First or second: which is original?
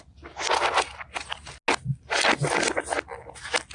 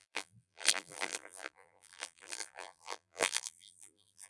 first